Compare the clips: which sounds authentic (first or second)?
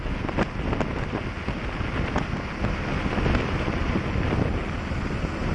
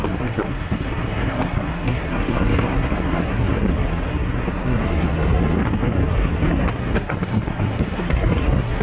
first